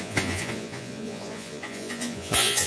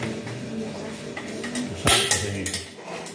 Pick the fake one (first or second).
first